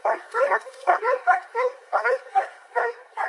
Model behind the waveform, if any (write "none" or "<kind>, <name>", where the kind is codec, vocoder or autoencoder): codec, SNAC